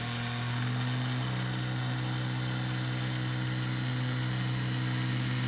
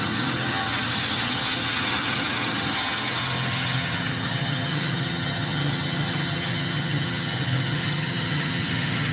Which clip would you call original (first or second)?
first